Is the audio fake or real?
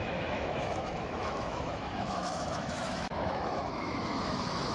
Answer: fake